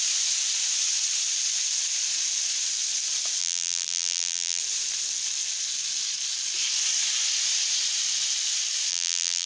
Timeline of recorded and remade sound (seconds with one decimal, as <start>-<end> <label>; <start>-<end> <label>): 0.0-3.4 recorded; 3.4-4.6 remade; 4.6-8.9 recorded; 8.9-9.5 remade